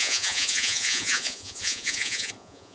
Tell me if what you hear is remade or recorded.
remade